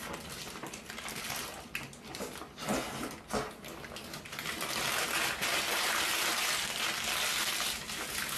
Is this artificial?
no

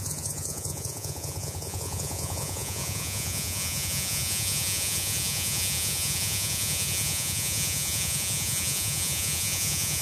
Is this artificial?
yes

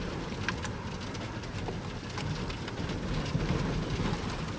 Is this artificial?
no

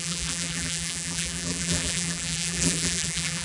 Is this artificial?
yes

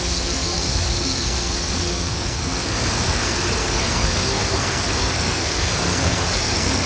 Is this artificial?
yes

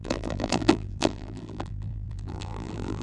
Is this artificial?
yes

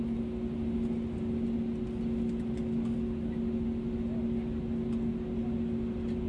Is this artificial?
no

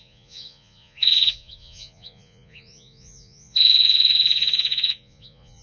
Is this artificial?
yes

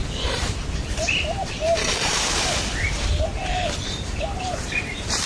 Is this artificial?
yes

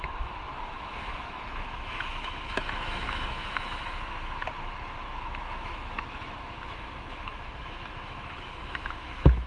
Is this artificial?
yes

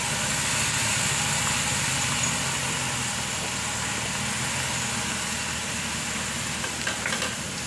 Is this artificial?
no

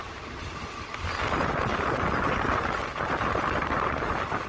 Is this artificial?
no